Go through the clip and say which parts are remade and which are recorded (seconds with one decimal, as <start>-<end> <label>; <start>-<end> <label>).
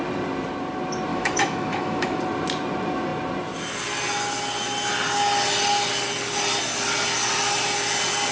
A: 0.0-1.1 recorded; 1.1-2.2 remade; 2.2-8.3 recorded